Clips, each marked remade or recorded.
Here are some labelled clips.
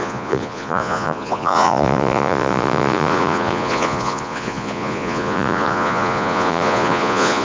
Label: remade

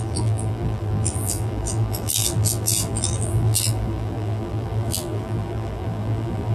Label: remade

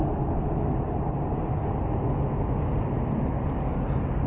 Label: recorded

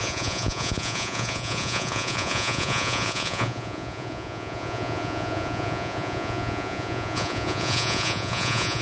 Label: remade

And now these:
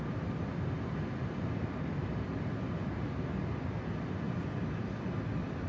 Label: recorded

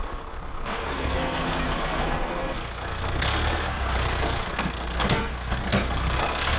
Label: remade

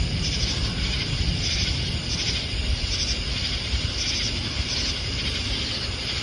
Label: recorded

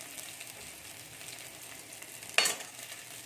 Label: recorded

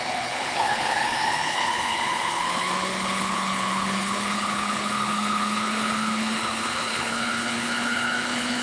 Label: remade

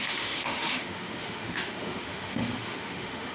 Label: remade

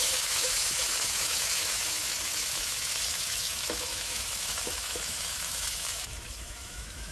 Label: remade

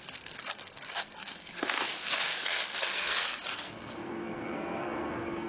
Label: remade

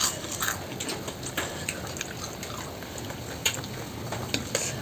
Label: recorded